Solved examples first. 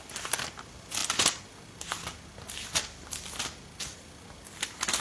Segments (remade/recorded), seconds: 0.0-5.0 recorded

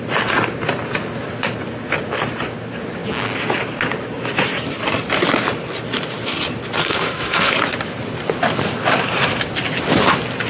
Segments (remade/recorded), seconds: 0.0-6.8 recorded; 6.8-7.5 remade; 7.5-10.5 recorded

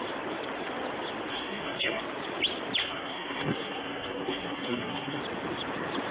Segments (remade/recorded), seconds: 0.0-1.3 recorded; 1.3-2.0 remade; 2.0-2.8 recorded; 2.8-5.2 remade; 5.2-6.1 recorded

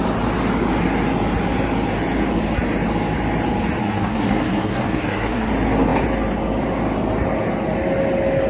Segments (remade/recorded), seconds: 0.0-3.8 recorded; 3.8-5.5 remade; 5.5-8.5 recorded

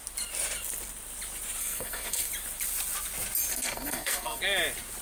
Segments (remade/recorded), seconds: 0.0-1.6 recorded; 1.6-2.3 remade; 2.3-3.5 recorded; 3.5-4.4 remade; 4.4-5.0 recorded

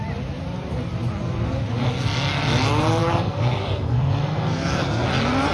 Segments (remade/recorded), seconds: 0.0-3.0 recorded; 3.0-5.1 remade; 5.1-5.5 recorded

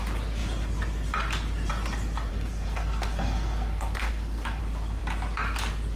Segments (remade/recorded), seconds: 0.0-2.3 recorded; 2.3-4.6 remade; 4.6-6.0 recorded